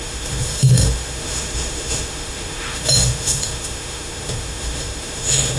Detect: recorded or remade remade